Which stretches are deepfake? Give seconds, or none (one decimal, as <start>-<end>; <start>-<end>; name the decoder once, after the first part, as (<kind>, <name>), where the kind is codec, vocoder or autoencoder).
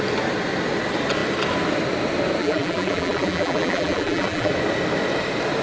2.4-4.5 (vocoder, BigVGAN v2)